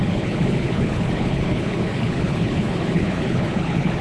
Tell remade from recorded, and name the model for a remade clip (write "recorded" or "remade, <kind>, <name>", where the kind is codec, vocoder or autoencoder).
remade, codec, HILCodec